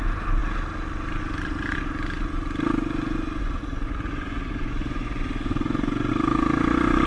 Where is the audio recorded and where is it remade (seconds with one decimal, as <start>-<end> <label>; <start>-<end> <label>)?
0.0-3.4 recorded; 3.4-6.1 remade; 6.1-7.1 recorded